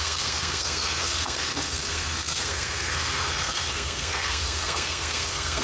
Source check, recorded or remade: remade